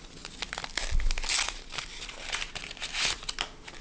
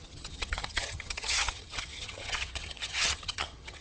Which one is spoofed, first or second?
second